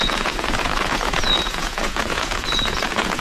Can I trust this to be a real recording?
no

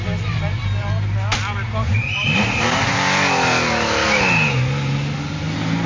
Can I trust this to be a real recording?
yes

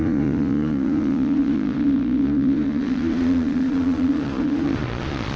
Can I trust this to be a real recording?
no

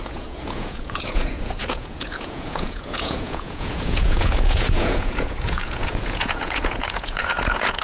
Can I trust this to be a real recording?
no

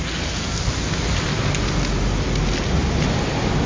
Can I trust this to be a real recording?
yes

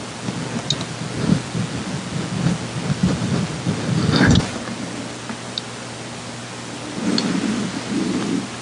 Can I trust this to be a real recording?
yes